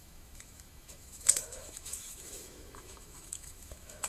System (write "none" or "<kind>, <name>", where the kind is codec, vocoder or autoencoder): autoencoder, DAC-VAE